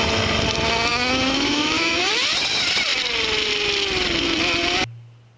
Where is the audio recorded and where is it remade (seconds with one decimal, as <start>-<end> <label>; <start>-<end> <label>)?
0.0-0.9 recorded; 0.9-2.1 remade; 2.1-5.4 recorded